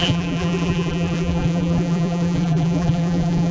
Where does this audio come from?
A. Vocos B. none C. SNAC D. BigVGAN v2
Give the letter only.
D